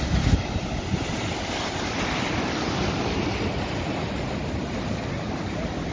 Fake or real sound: real